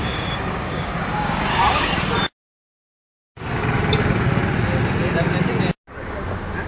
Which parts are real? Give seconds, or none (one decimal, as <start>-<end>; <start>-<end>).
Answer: 1.9-6.7